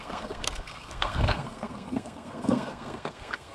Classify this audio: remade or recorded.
remade